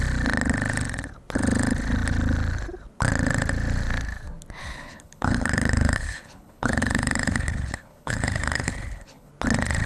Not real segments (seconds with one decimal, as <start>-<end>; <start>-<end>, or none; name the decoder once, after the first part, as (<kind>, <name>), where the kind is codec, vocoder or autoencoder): 4.6-9.3 (codec, HILCodec)